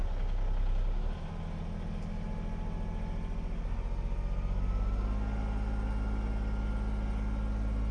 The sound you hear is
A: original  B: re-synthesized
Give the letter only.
A